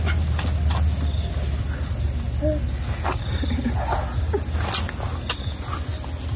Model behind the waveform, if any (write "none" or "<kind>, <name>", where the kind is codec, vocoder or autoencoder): none